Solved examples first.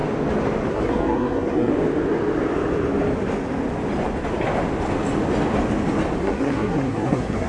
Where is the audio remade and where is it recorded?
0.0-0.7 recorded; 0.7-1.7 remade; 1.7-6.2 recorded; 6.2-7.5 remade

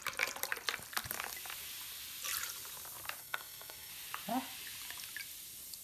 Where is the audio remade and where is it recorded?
0.0-3.2 recorded; 3.2-3.9 remade; 3.9-5.8 recorded

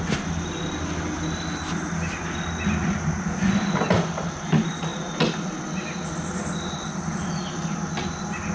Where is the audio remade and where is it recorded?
0.0-8.5 recorded

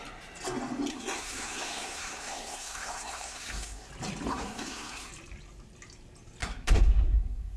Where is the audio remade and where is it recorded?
0.0-0.9 recorded; 0.9-3.9 remade; 3.9-4.3 recorded; 4.3-5.1 remade; 5.1-6.4 recorded; 6.4-7.6 remade

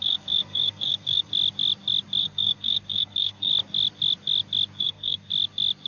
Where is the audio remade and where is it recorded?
0.0-1.3 remade; 1.3-2.2 recorded; 2.2-3.5 remade; 3.5-4.8 recorded; 4.8-5.3 remade; 5.3-5.9 recorded

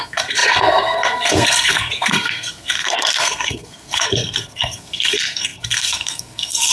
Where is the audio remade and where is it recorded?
0.0-6.7 remade